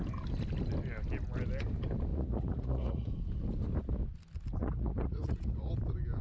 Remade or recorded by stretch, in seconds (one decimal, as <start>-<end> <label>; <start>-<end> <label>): 0.0-2.1 recorded; 2.1-3.1 remade; 3.1-4.6 recorded; 4.6-5.7 remade; 5.7-6.2 recorded